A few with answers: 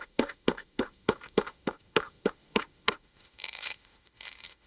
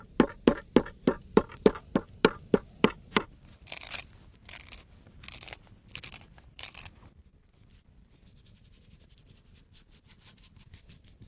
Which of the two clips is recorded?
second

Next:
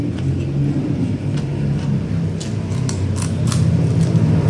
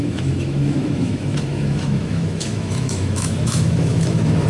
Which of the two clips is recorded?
first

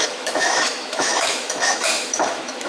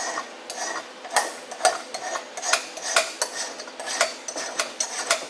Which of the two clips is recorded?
second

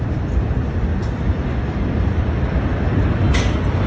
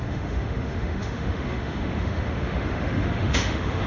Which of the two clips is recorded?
first